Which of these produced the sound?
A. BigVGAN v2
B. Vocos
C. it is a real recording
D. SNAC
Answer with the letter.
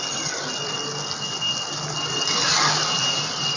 C